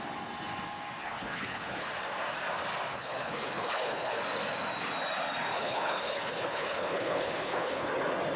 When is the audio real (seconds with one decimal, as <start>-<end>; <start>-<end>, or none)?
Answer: 0.0-1.0; 1.9-2.9; 4.2-5.5; 7.9-8.4